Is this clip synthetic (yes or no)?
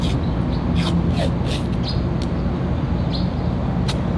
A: no